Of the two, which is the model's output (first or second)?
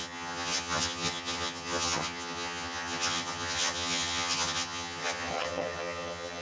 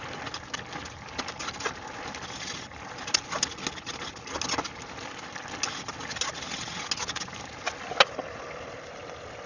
first